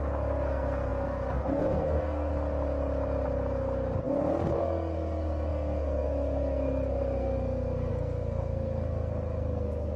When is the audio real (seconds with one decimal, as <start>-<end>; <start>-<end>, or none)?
2.3-4.0